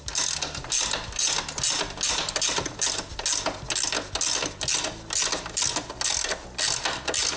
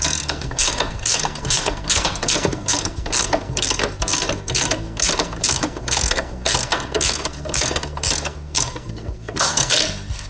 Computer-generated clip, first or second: second